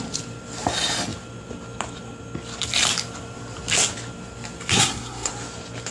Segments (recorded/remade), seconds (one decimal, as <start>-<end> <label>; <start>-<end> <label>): 0.0-4.7 recorded; 4.7-5.3 remade; 5.3-5.9 recorded

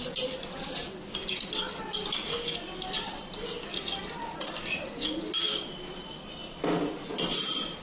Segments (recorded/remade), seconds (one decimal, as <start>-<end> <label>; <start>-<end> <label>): 0.0-7.8 recorded